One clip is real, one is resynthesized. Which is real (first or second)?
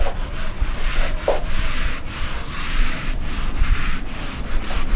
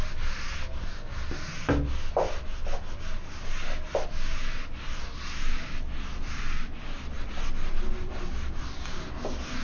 second